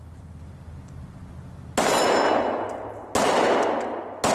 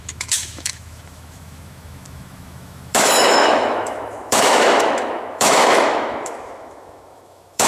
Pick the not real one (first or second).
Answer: second